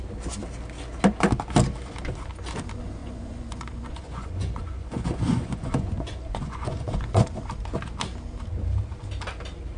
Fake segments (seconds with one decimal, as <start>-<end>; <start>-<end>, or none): 3.0-7.4